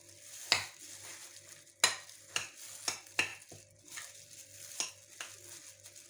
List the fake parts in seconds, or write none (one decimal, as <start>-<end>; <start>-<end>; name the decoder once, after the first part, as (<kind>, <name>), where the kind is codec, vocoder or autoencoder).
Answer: none